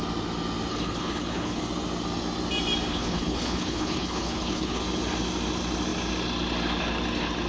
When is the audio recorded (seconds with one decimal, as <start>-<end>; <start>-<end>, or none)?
0.0-0.7; 1.6-2.9; 4.8-7.5